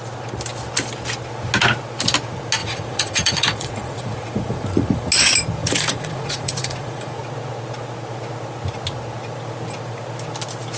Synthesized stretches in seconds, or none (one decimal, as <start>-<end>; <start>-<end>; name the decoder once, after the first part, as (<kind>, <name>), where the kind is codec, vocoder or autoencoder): 2.6-5.1 (vocoder, Vocos); 5.6-7.2